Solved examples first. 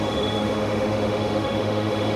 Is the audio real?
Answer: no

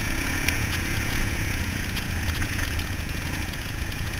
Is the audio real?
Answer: no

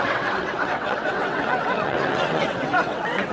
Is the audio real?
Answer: no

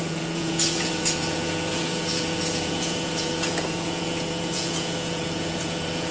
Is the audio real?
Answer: no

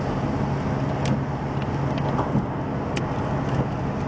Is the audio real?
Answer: yes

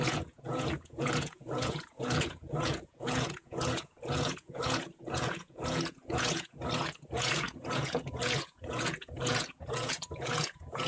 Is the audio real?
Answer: no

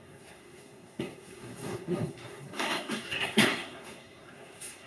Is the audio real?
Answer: no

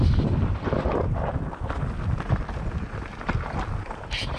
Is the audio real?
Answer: yes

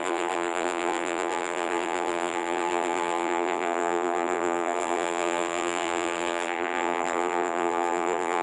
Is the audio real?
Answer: no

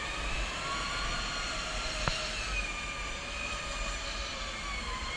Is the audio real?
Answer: yes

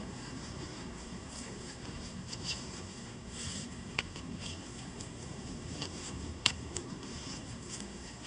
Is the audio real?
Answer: no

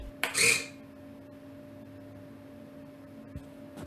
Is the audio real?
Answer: yes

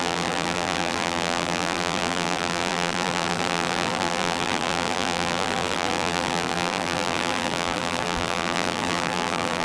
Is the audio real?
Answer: no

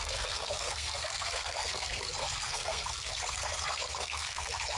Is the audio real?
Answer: no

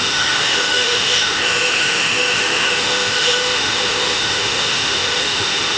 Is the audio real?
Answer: no